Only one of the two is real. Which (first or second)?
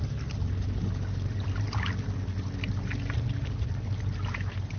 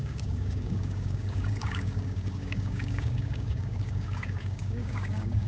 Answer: first